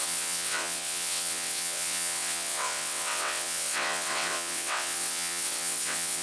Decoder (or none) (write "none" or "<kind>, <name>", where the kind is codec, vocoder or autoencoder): vocoder, WaveNeXt